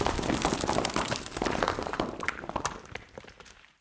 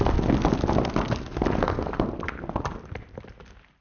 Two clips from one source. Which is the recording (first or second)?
second